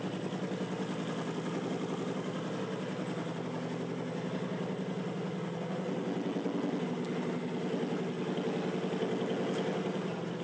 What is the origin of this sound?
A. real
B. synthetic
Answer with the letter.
A